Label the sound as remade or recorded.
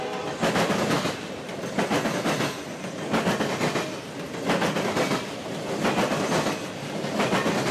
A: recorded